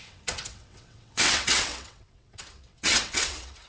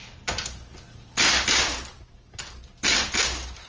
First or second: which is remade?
first